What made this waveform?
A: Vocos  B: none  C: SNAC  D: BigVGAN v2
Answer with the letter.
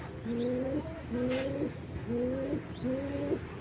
B